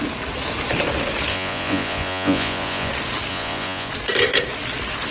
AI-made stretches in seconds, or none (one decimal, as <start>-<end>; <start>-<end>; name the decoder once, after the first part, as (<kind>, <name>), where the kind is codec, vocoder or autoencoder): 1.3-2.9 (vocoder, Vocos); 3.3-3.9